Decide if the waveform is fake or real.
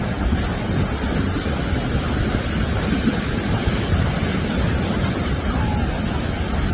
real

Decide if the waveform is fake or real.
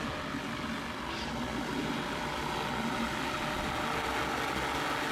real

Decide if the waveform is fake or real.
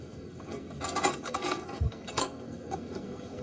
fake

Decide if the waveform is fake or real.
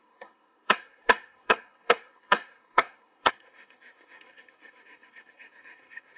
fake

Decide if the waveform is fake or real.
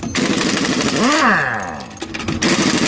real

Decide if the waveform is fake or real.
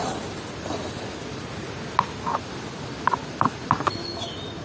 real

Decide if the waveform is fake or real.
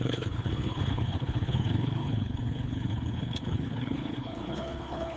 fake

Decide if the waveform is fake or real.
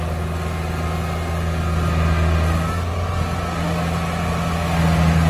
real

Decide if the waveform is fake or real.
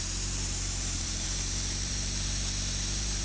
fake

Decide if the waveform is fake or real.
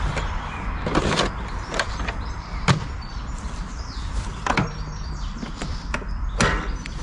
real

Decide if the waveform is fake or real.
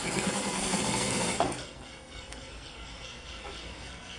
fake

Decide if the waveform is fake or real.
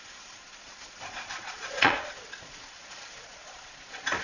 fake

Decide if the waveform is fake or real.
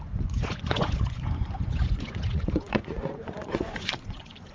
fake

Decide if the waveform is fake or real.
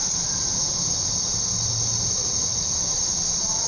real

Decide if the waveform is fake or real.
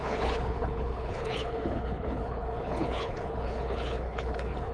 fake